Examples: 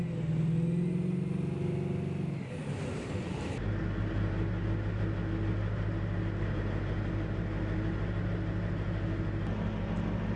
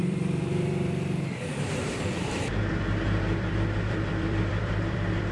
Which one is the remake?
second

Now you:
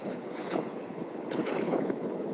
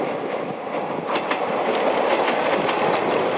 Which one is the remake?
first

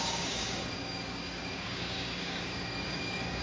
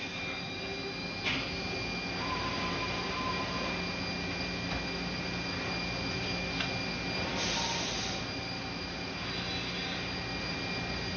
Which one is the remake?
first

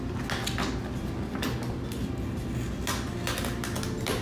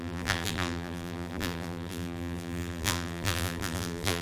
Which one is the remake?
second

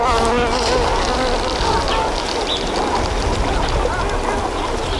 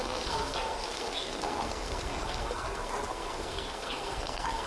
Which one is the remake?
second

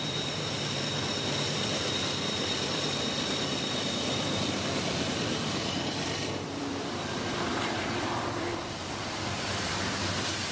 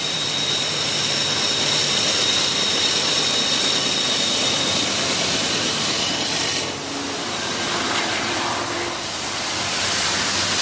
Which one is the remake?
first